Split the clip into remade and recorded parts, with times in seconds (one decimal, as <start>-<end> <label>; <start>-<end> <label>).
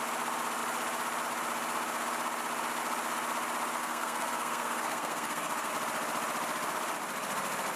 0.0-3.8 recorded; 3.8-5.7 remade; 5.7-7.8 recorded